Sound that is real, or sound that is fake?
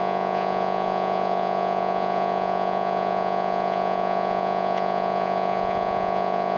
fake